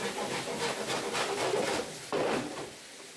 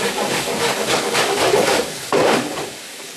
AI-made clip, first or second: second